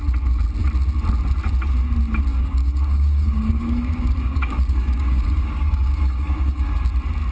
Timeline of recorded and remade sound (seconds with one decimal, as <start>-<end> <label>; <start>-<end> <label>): 0.0-2.3 recorded; 2.3-6.7 remade; 6.7-7.3 recorded